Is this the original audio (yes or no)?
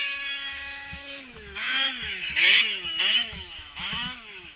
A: no